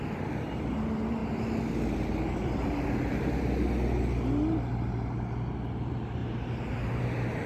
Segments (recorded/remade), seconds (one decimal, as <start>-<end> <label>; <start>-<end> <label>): 0.0-6.2 recorded; 6.2-7.0 remade; 7.0-7.5 recorded